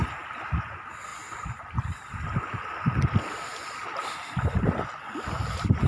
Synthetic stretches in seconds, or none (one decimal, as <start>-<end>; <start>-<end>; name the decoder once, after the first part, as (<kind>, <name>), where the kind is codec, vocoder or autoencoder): none